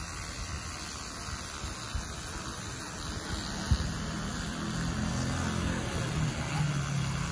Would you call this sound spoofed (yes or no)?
no